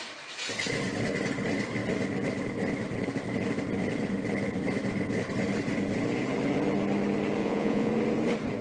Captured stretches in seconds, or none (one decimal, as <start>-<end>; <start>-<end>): 0.0-7.4; 7.9-8.6